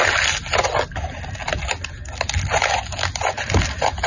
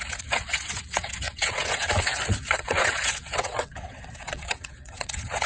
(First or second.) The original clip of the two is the first